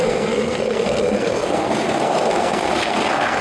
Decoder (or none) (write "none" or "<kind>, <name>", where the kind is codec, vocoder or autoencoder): codec, SNAC